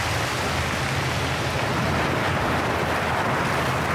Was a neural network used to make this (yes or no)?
no